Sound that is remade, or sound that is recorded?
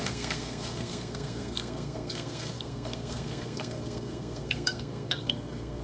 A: remade